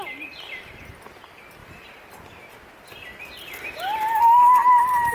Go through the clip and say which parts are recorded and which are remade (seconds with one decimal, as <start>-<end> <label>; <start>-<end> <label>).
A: 0.0-5.1 recorded